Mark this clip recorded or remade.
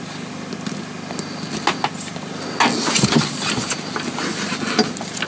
recorded